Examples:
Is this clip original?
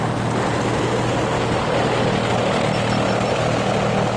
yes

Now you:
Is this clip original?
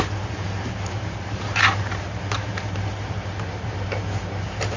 no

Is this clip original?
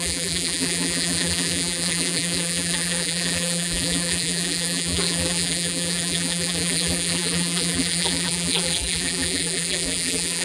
no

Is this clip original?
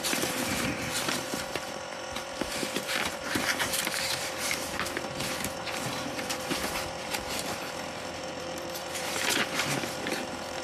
no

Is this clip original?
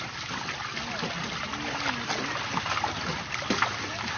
yes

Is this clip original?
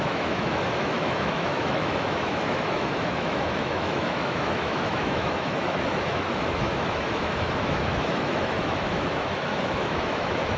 no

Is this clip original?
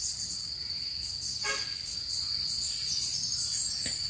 yes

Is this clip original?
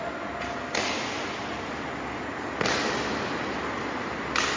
yes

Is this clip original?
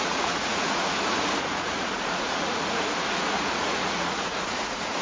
no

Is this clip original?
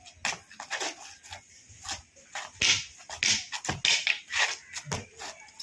yes